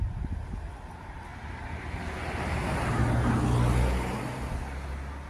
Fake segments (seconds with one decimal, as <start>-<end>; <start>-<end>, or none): none